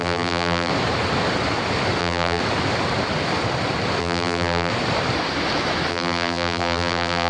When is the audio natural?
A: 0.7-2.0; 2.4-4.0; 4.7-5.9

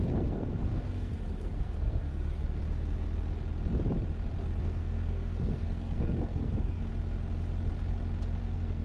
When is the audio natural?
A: 2.6-4.6; 6.9-8.4

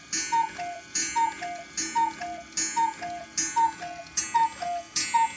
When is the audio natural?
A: 0.0-5.4

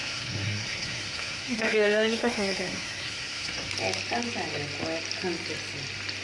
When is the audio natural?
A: 3.7-6.2

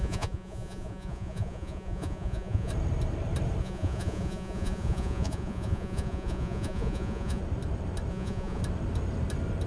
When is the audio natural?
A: 2.7-3.6; 7.4-8.1; 8.6-9.7